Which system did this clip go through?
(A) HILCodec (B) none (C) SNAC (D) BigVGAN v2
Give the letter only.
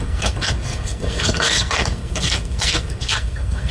C